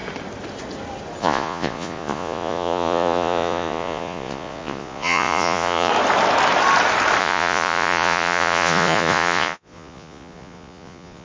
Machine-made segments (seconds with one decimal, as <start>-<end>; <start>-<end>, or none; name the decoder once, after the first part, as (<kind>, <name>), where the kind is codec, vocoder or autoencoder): 1.2-5.9 (vocoder, Vocos); 7.2-11.2